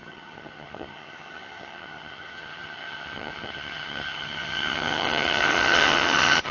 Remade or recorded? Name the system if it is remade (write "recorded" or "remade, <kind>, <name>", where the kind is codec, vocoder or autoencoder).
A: remade, vocoder, HiFi-GAN